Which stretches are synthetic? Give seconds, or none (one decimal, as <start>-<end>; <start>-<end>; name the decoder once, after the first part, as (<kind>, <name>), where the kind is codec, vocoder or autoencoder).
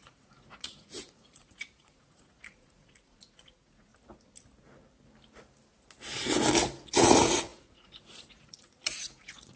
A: 0.0-3.9 (vocoder, Vocos); 6.9-9.6